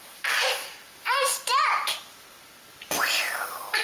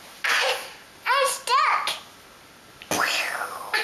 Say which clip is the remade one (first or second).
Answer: first